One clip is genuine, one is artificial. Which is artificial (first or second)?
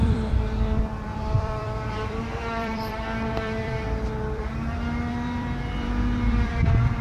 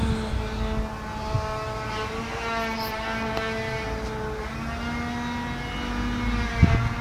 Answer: first